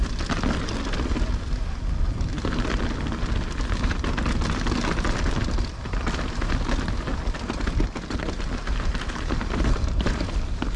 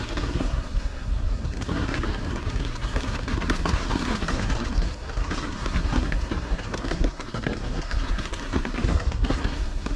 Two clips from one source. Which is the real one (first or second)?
first